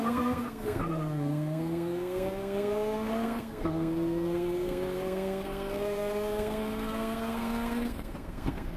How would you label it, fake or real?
fake